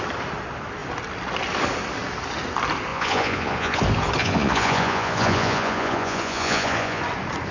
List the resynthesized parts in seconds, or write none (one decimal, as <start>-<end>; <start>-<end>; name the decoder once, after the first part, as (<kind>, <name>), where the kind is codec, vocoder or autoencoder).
2.9-3.8 (vocoder, Vocos); 4.2-7.0